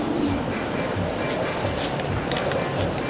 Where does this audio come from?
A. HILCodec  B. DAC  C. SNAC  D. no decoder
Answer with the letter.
D